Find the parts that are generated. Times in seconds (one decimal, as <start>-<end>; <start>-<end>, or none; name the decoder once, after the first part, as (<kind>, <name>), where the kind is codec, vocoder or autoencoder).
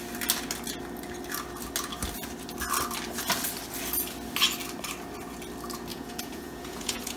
5.9-7.2 (vocoder, Vocos)